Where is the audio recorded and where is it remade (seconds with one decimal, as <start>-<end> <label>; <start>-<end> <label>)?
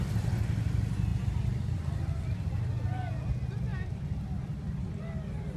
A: 0.0-5.6 remade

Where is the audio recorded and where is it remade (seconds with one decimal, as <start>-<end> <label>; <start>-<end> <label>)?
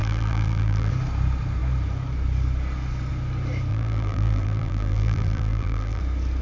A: 0.0-0.9 remade; 0.9-3.7 recorded; 3.7-6.0 remade; 6.0-6.4 recorded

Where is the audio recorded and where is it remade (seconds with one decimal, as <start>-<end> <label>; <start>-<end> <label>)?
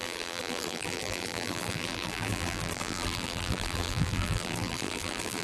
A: 0.0-5.4 remade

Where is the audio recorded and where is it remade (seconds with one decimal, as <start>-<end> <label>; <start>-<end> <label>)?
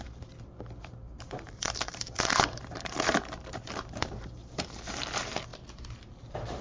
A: 0.0-6.6 remade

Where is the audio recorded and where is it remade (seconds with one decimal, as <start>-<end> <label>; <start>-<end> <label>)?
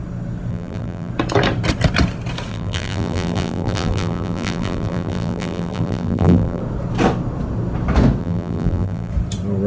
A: 0.0-0.5 recorded; 0.5-1.1 remade; 1.1-2.5 recorded; 2.5-6.6 remade; 6.6-8.2 recorded; 8.2-9.1 remade; 9.1-9.7 recorded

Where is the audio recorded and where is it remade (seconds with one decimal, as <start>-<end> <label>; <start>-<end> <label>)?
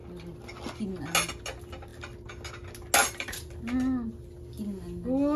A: 0.0-3.0 recorded; 3.0-3.5 remade; 3.5-5.4 recorded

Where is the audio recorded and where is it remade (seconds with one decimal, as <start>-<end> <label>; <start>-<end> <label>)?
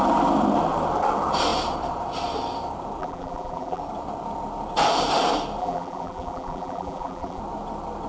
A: 0.0-3.0 recorded; 3.0-3.8 remade; 3.8-5.6 recorded; 5.6-7.4 remade; 7.4-8.1 recorded